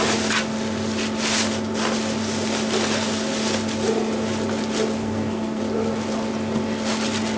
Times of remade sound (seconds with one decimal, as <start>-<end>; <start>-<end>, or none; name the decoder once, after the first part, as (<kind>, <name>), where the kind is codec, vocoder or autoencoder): 5.0-5.6 (codec, SNAC)